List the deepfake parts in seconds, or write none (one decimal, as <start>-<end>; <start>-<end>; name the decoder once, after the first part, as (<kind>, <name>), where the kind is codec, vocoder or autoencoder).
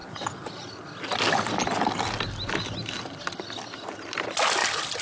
none